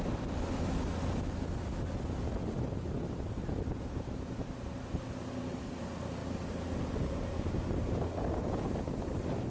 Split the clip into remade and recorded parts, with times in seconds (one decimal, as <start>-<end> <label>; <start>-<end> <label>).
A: 0.0-9.5 recorded